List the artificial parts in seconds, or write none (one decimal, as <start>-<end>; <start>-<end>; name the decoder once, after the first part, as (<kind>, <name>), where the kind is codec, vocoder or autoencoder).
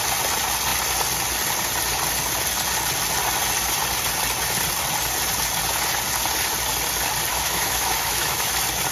7.3-8.5 (autoencoder, DAC-VAE)